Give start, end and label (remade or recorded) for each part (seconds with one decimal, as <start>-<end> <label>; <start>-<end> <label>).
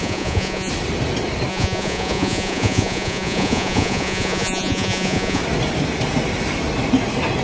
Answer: 0.0-0.7 remade; 0.7-1.5 recorded; 1.5-5.4 remade; 5.4-7.4 recorded